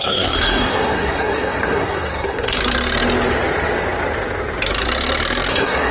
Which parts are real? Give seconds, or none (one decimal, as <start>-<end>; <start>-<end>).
2.6-5.5